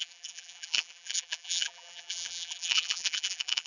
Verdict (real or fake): fake